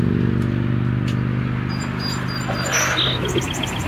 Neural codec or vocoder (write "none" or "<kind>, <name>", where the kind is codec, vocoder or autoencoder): none